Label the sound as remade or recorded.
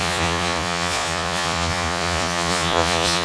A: remade